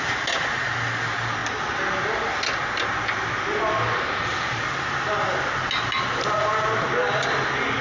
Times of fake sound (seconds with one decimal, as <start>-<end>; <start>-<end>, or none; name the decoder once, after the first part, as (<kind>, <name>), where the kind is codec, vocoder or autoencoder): none